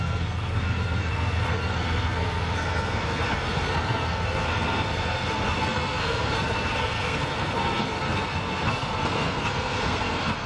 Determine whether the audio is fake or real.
fake